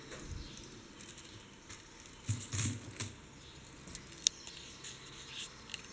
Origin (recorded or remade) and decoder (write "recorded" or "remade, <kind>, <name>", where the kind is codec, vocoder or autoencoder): recorded